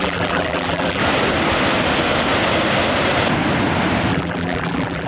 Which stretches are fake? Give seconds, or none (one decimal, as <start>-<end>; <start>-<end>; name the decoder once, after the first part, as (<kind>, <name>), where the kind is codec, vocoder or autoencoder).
0.0-1.0 (vocoder, BigVGAN v2); 4.1-5.1